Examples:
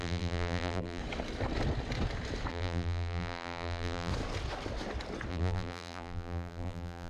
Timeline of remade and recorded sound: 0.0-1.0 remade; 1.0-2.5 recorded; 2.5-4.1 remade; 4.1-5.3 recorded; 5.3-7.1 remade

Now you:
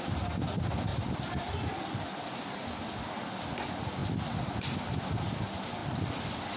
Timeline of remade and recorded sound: 0.0-0.9 recorded; 0.9-3.1 remade; 3.1-4.0 recorded; 4.0-4.9 remade; 4.9-5.8 recorded; 5.8-6.6 remade